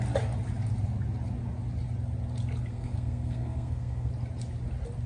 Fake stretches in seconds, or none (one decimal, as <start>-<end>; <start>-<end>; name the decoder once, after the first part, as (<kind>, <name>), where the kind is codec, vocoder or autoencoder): 2.7-4.1 (codec, SNAC)